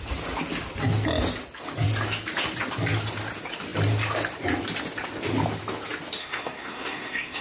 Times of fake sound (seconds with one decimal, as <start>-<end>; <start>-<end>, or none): 6.2-7.4